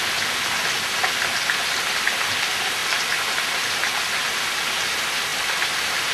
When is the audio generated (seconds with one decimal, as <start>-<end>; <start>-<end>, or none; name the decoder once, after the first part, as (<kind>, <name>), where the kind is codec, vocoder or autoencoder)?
none